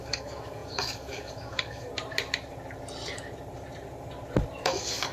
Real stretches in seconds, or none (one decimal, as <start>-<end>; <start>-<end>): 1.9-4.6